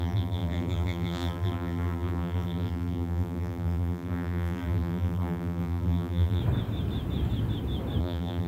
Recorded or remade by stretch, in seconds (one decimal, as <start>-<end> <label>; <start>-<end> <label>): 0.0-6.4 remade; 6.4-8.0 recorded; 8.0-8.5 remade